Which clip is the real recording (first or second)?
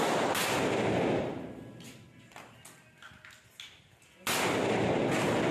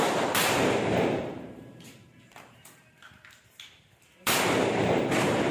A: first